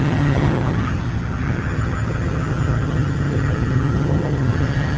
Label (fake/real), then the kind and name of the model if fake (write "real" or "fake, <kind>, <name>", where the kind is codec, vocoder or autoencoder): fake, vocoder, HiFi-GAN